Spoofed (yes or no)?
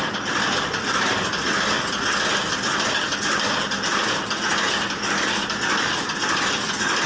no